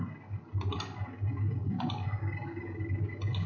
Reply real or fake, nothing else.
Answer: real